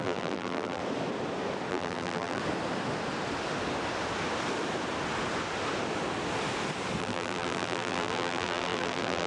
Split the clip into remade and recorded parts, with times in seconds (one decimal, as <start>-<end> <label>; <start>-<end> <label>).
0.0-0.8 remade; 0.8-1.7 recorded; 1.7-2.4 remade; 2.4-7.0 recorded; 7.0-9.3 remade